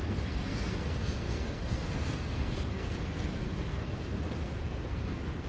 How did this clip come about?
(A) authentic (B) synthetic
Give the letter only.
B